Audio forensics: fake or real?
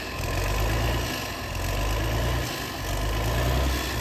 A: real